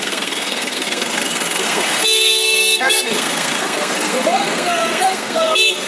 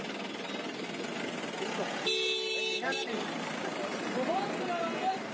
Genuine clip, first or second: second